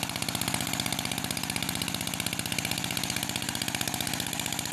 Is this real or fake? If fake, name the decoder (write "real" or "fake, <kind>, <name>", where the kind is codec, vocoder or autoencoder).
real